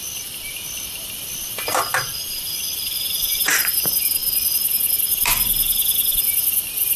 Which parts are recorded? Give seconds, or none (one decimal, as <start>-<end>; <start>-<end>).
0.5-1.7; 4.2-5.1